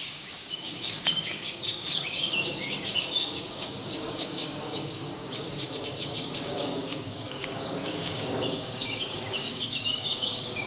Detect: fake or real fake